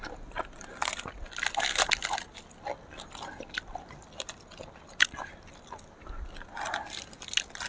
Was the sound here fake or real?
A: real